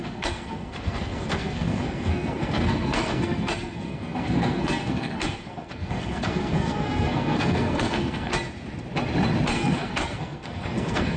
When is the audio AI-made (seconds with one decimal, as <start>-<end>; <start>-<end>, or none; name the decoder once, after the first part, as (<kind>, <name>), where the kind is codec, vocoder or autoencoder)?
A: 0.0-8.3 (codec, SNAC); 9.5-11.2